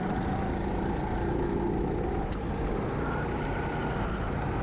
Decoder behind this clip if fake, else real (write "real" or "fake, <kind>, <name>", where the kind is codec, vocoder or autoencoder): real